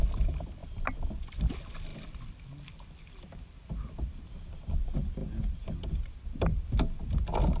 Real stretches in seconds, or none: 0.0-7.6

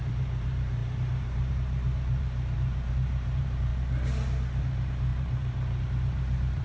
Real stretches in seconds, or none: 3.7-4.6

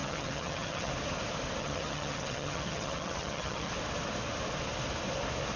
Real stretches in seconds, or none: 0.9-1.6; 3.7-5.6

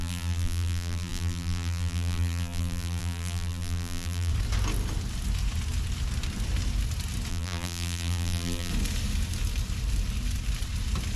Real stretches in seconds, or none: 4.3-7.3; 8.7-11.2

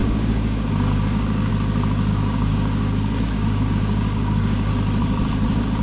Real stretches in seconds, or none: 1.5-2.1; 4.7-5.8

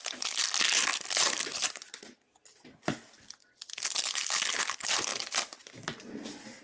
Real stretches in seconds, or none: 0.0-6.6

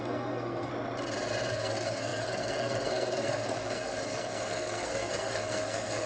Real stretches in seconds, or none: 0.7-1.5

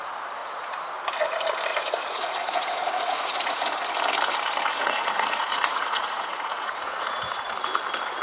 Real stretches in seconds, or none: 0.0-0.4; 0.9-1.7; 3.7-4.7; 7.3-8.2